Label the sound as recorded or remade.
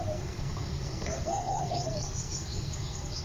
remade